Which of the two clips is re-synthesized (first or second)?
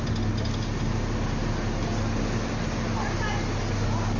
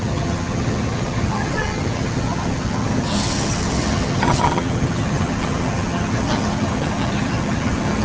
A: second